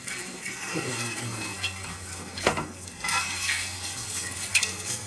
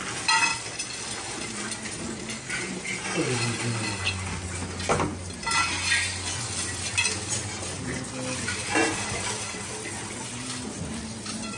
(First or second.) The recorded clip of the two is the second